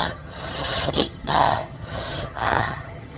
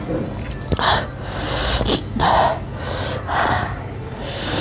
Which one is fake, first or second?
first